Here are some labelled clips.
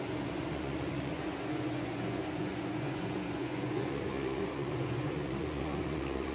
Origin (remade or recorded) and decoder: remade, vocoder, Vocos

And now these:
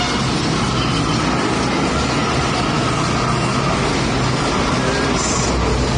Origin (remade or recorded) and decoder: recorded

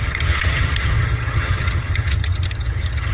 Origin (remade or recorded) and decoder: remade, vocoder, HiFi-GAN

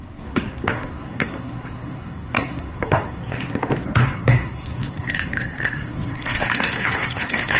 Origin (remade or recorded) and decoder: remade, codec, SNAC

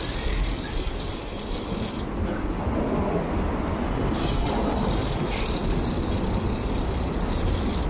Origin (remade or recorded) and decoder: recorded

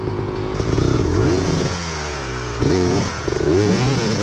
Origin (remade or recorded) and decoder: remade, vocoder, Vocos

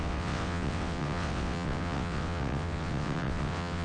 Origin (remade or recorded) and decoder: remade, vocoder, WaveNeXt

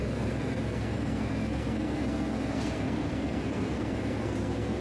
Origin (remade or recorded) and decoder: remade, codec, SNAC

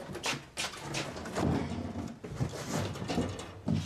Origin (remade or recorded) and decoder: recorded